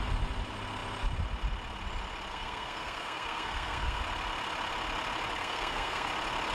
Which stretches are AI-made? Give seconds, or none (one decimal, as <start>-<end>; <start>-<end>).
2.3-4.0; 5.4-6.1